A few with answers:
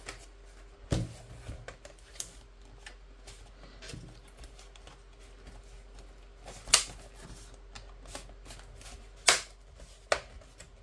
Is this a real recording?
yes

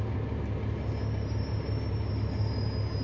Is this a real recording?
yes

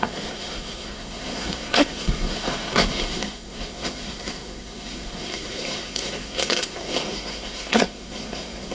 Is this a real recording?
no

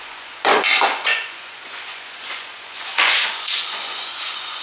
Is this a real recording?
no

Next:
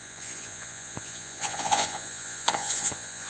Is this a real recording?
no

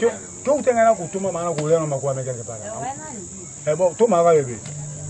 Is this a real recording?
yes